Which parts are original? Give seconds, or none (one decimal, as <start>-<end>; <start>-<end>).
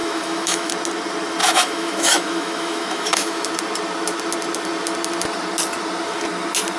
0.7-1.4; 3.5-6.8